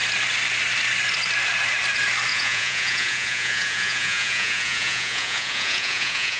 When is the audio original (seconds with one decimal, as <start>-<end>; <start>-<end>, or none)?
0.0-2.3